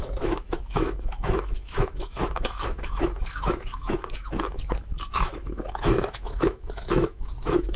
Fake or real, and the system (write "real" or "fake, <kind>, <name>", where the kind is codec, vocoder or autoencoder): fake, autoencoder, DAC-VAE